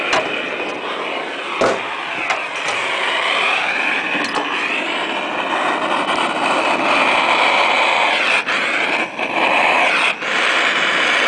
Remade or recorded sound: recorded